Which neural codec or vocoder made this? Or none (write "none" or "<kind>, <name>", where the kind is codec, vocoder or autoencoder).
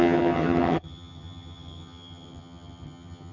vocoder, HiFi-GAN